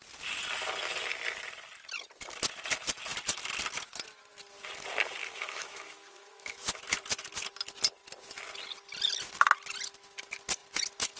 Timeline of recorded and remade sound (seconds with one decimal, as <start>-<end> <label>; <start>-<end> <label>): 0.0-5.2 recorded; 5.2-6.8 remade; 6.8-11.2 recorded